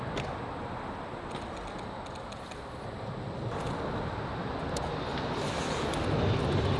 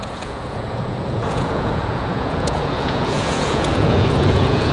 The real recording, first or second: first